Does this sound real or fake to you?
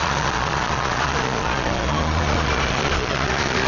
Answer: fake